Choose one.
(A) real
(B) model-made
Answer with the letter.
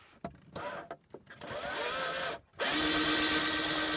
A